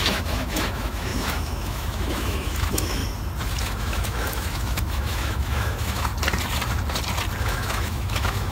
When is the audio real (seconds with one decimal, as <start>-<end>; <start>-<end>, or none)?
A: 3.0-3.6; 6.1-7.4